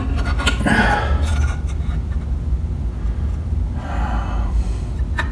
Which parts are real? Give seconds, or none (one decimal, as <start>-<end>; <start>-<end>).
0.0-5.3